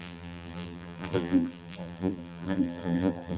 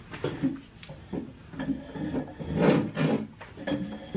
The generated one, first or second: first